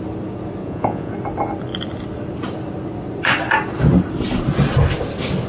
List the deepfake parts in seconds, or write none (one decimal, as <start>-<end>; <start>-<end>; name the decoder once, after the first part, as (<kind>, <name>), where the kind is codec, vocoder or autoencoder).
0.6-1.1 (vocoder, Vocos)